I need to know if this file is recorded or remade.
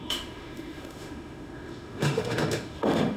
remade